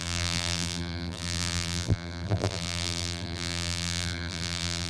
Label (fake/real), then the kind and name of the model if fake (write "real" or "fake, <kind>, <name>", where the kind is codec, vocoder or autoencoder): fake, vocoder, BigVGAN v2